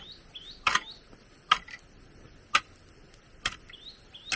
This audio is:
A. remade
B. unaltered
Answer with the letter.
B